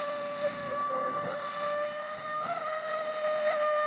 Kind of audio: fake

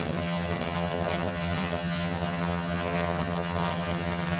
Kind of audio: fake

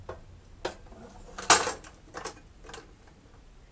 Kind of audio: real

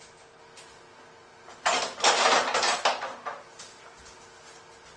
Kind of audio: real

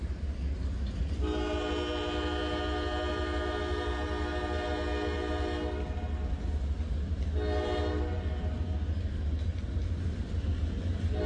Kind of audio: real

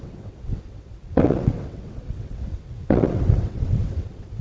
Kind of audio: fake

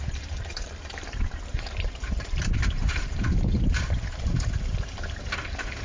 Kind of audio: fake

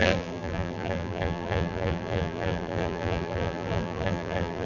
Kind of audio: fake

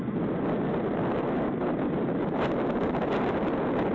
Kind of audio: real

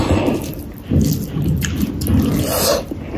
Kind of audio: real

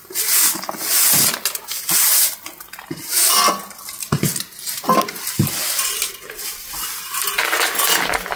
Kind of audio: real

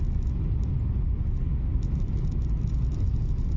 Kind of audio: real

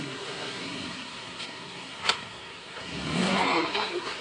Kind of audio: fake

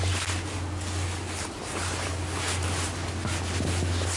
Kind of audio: real